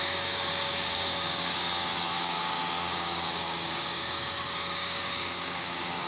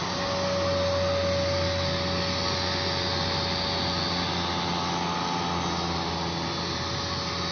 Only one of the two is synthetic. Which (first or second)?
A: first